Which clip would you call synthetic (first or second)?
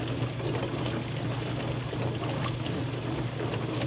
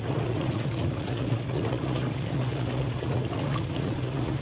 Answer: second